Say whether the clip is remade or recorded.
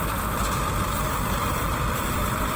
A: remade